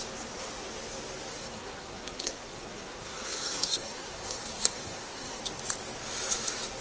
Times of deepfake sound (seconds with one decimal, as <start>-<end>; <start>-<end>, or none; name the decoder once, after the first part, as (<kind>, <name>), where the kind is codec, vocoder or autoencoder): 1.3-5.4 (codec, SNAC)